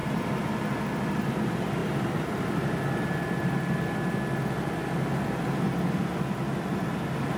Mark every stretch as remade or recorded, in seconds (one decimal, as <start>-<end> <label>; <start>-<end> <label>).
0.0-7.4 recorded